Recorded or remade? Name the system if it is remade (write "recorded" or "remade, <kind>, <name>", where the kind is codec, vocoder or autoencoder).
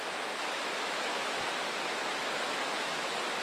remade, autoencoder, DAC-VAE